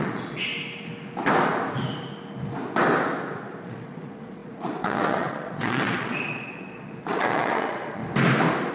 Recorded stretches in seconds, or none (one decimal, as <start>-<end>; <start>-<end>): 0.5-3.6; 8.0-8.7